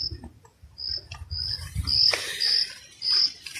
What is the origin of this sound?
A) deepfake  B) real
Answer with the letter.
B